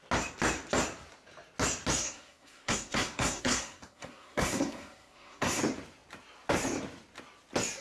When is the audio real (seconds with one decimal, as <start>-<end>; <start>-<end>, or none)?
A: 0.0-2.0; 5.6-7.8